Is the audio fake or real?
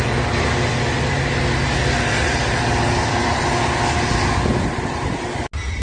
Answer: real